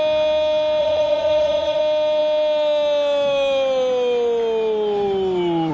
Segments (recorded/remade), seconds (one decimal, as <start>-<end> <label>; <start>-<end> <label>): 0.0-0.8 recorded; 0.8-1.8 remade; 1.8-5.7 recorded